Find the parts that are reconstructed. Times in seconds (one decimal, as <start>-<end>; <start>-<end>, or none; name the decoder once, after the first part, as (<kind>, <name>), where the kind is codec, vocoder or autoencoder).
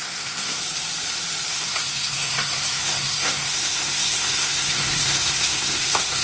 0.0-0.6 (codec, SNAC); 1.5-6.2